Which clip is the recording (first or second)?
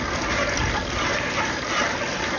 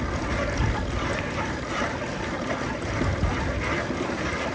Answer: first